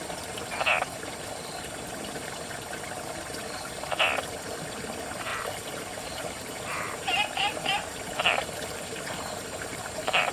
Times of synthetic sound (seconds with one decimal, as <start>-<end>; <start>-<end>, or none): 5.3-10.3